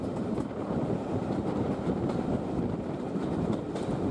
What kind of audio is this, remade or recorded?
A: remade